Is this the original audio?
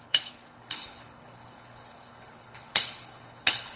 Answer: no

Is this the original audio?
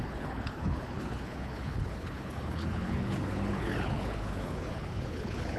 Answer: no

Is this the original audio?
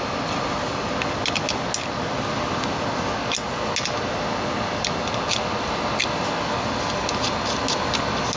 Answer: yes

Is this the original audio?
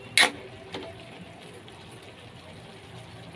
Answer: yes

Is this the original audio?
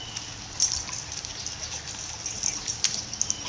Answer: yes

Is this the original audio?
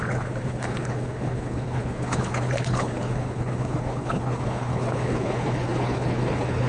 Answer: no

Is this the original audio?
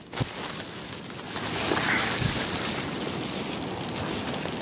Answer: yes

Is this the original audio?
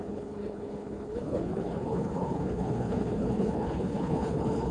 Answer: no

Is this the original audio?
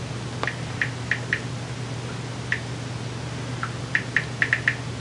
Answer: yes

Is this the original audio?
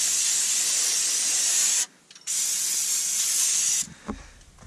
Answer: yes